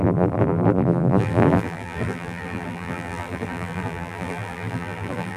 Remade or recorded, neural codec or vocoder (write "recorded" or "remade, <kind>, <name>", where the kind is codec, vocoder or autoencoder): remade, vocoder, BigVGAN v2